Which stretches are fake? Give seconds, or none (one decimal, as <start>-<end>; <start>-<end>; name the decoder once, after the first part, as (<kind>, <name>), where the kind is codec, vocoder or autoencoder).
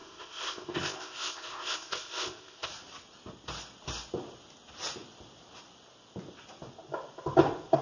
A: 0.0-2.7 (codec, ZipCodec)